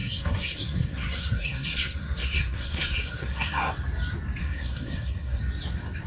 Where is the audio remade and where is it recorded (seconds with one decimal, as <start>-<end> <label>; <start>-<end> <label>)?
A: 0.0-3.7 remade; 3.7-4.4 recorded; 4.4-5.4 remade; 5.4-6.1 recorded